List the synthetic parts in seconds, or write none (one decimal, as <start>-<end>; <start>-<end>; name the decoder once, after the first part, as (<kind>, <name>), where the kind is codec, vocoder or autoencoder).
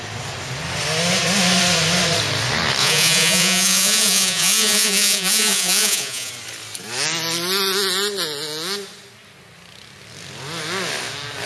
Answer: 2.8-6.3 (vocoder, Vocos)